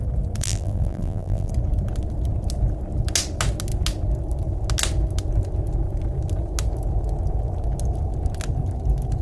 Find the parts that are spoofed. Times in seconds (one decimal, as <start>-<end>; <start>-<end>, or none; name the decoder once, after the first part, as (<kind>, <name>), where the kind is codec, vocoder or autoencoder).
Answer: 0.4-1.5 (vocoder, BigVGAN v2)